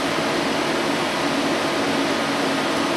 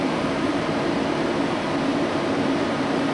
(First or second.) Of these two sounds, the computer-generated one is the second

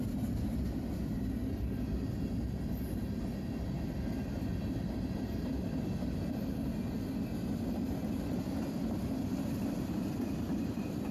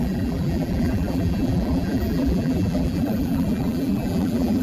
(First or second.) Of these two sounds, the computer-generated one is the second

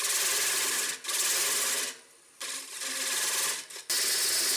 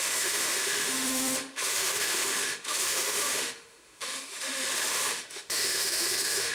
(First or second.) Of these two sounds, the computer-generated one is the second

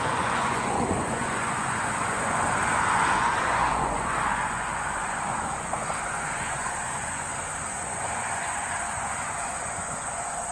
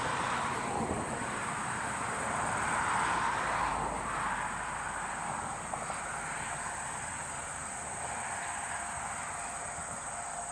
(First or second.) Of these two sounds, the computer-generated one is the first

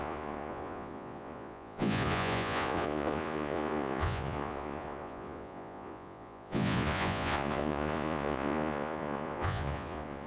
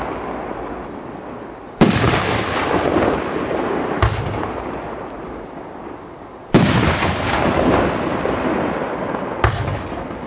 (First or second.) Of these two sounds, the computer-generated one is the first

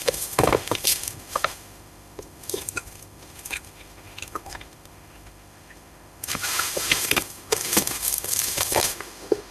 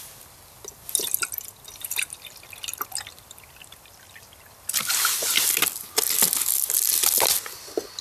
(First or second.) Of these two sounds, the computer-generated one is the first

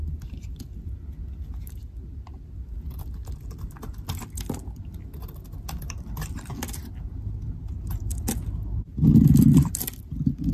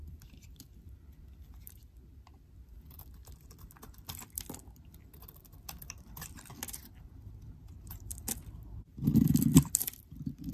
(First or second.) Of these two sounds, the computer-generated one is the second